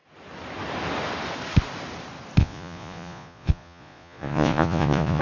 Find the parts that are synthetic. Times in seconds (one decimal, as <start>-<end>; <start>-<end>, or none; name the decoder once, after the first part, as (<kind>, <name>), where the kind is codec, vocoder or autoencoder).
2.4-5.2 (vocoder, Vocos)